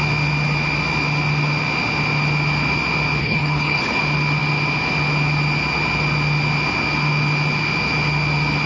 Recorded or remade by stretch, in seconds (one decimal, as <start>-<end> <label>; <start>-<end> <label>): 0.0-3.2 recorded; 3.2-4.0 remade; 4.0-8.7 recorded